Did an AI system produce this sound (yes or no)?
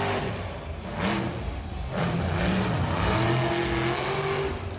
no